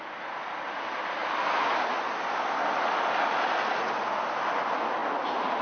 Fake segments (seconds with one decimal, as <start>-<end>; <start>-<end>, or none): none

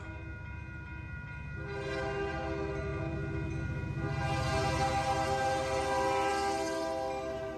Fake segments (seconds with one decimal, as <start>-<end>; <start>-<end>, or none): none